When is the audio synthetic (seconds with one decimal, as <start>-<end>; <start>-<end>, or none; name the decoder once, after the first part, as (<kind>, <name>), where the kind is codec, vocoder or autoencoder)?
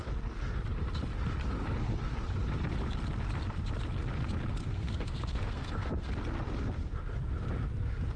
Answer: 4.6-6.1 (codec, SNAC)